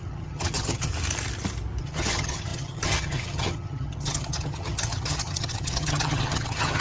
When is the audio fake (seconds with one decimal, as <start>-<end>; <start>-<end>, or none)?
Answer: 0.0-0.9; 1.8-6.8